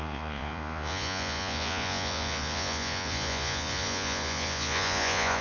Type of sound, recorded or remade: remade